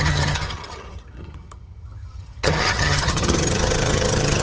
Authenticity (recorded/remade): remade